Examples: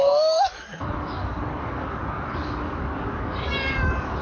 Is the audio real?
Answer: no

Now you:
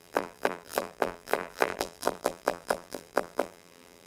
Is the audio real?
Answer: no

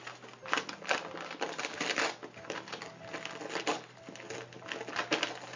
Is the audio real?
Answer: yes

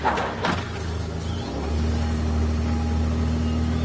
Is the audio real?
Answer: yes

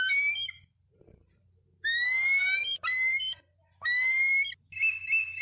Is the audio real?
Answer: yes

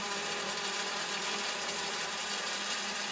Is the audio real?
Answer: no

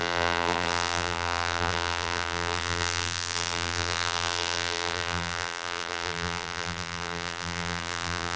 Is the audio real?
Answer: no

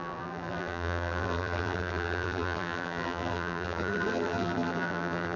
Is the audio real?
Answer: no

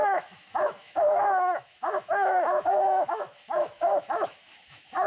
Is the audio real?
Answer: no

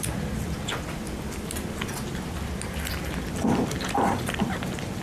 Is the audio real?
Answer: yes